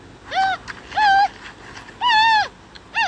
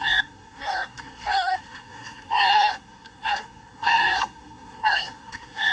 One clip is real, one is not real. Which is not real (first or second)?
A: second